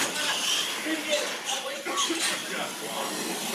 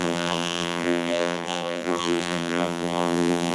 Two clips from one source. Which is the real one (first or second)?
first